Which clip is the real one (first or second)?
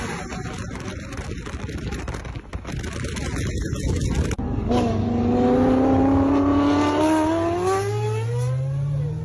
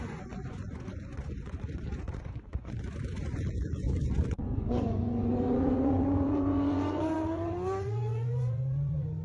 first